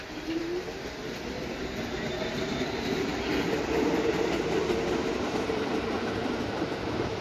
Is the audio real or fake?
real